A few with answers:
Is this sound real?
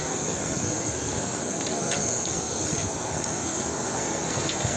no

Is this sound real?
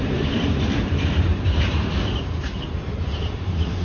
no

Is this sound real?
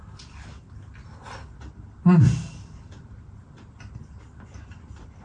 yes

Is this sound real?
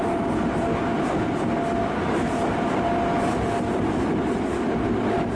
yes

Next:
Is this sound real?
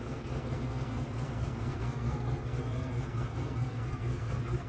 no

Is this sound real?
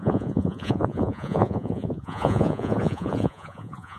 no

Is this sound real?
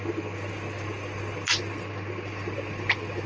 yes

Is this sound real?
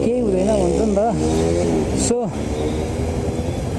yes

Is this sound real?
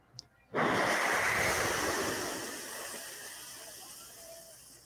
yes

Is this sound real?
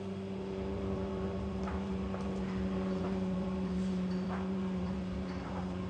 no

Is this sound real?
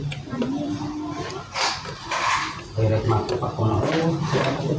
yes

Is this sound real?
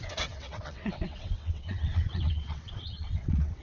no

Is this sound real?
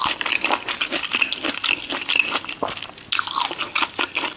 yes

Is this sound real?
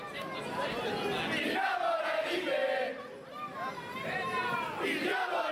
yes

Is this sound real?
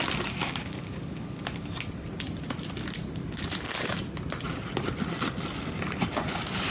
yes